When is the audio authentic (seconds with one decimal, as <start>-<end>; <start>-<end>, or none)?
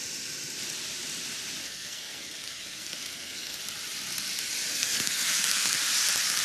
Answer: 0.0-1.6; 3.6-4.7; 5.8-6.4